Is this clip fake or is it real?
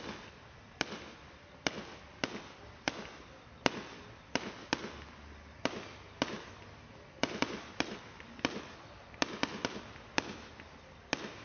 real